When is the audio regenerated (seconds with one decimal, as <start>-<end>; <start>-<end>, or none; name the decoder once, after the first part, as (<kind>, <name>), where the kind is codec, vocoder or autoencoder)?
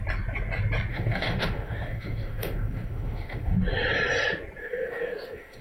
0.9-3.6 (autoencoder, DAC-VAE); 4.6-5.6